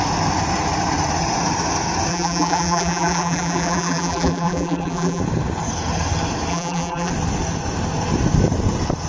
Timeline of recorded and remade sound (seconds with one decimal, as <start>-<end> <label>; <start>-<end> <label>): 0.0-2.1 recorded; 2.1-5.2 remade; 5.2-6.5 recorded; 6.5-7.1 remade; 7.1-9.1 recorded